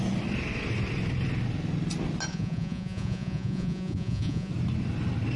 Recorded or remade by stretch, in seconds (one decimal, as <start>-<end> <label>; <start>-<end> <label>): 0.0-2.3 recorded; 2.3-4.5 remade; 4.5-5.4 recorded